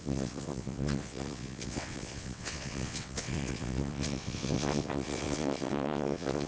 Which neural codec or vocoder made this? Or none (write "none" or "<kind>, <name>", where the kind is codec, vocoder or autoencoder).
vocoder, WaveNeXt